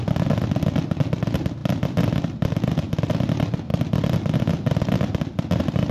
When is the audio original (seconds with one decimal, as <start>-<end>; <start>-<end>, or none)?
0.0-5.9